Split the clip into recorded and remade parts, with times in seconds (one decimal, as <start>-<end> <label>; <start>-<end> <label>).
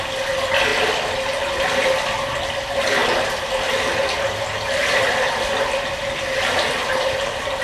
0.0-6.8 recorded; 6.8-7.6 remade